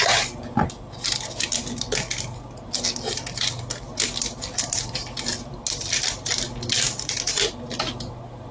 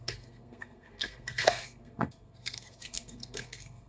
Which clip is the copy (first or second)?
second